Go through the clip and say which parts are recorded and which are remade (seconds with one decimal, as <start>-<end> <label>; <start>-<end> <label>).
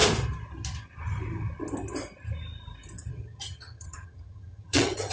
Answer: 0.0-3.1 recorded; 3.1-5.1 remade